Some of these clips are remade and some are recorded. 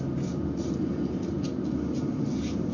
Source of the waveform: recorded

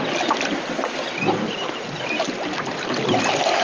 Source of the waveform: recorded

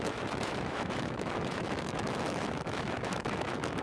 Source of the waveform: remade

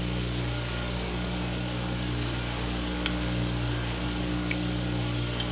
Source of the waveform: remade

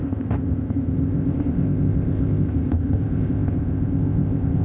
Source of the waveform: remade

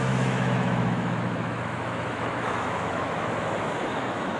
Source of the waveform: remade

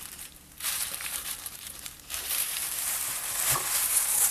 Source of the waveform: remade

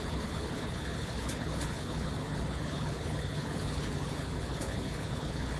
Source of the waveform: remade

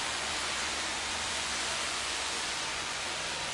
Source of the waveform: remade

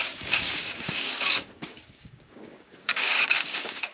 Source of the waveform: remade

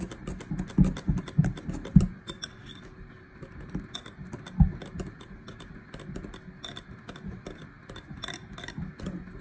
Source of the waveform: recorded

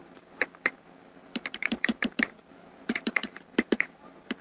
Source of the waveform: remade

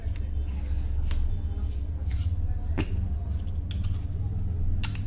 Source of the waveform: recorded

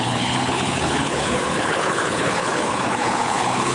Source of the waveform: remade